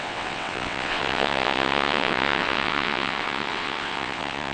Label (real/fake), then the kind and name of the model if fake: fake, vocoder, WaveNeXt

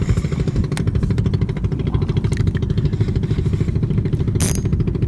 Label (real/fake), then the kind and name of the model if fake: real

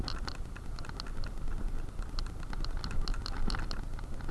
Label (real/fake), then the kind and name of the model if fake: real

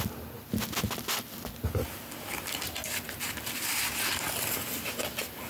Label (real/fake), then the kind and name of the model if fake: real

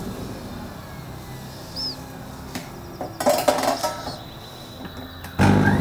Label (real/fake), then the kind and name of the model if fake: real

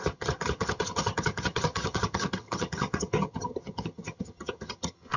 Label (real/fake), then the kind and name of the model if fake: fake, vocoder, HiFi-GAN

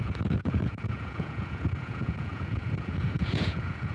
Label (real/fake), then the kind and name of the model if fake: fake, vocoder, Vocos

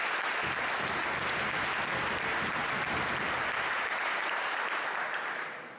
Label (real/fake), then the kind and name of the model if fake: real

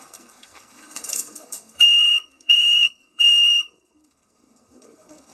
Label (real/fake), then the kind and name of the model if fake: fake, codec, SNAC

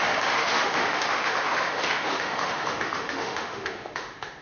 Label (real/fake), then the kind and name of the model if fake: fake, autoencoder, DAC-VAE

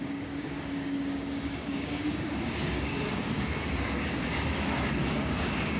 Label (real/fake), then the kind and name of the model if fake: fake, codec, DAC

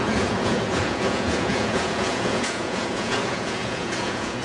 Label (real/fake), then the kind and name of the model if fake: fake, vocoder, Vocos